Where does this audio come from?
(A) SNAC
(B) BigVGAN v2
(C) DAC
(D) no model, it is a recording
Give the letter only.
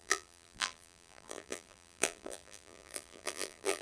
B